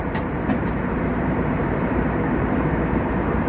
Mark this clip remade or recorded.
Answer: remade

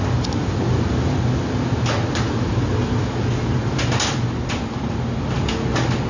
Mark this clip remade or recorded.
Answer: recorded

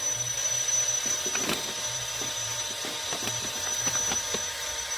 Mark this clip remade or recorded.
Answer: remade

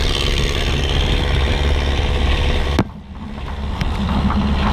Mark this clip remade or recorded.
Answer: recorded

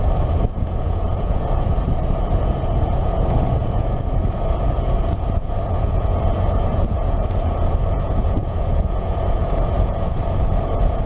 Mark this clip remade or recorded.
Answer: remade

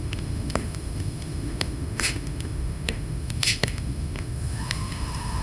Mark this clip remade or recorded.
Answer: remade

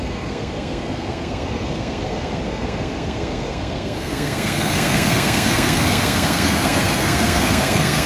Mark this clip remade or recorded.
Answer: remade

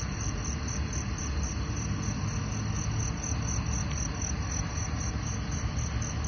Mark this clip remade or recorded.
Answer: recorded